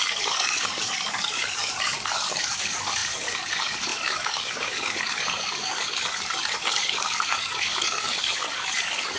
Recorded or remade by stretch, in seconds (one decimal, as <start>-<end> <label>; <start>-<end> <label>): 0.0-9.2 remade